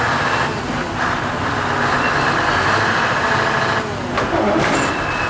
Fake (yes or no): no